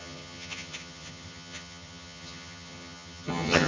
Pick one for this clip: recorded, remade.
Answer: remade